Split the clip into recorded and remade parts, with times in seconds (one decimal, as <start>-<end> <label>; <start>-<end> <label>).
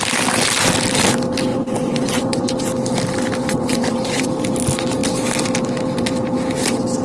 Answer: 0.0-1.5 recorded; 1.5-2.5 remade; 2.5-3.4 recorded; 3.4-4.3 remade; 4.3-7.0 recorded